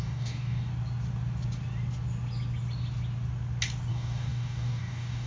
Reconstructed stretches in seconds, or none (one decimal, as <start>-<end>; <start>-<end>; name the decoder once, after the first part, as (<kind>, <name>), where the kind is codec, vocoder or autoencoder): 0.0-0.7 (codec, DAC); 3.9-5.3